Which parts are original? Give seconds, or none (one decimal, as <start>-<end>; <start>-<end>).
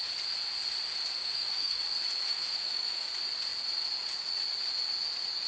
0.0-1.2; 1.8-2.3; 3.1-5.5